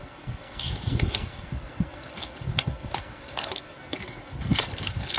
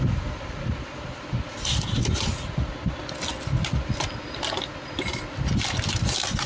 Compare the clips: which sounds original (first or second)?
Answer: second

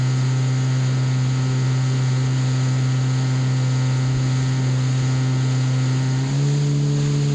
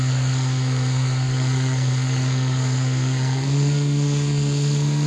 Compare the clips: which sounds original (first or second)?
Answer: first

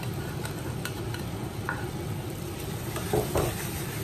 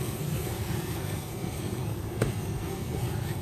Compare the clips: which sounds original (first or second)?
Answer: first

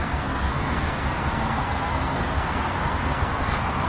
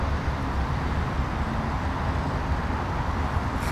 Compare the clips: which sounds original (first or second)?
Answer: second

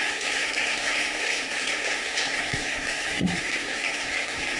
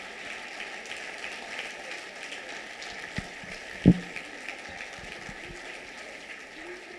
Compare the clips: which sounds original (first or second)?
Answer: second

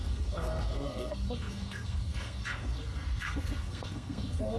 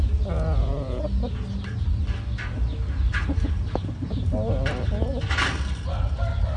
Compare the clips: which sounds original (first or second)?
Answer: second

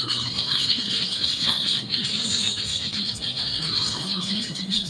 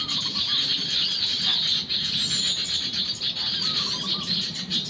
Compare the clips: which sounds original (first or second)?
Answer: second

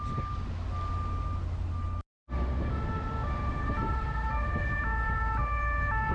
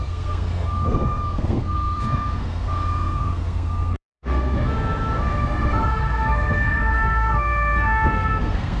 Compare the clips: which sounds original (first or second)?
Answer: first